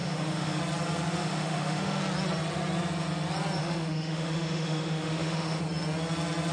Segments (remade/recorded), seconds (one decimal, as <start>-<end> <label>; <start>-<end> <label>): 0.0-0.6 remade; 0.6-1.2 recorded; 1.2-2.0 remade; 2.0-3.6 recorded; 3.6-5.6 remade; 5.6-6.5 recorded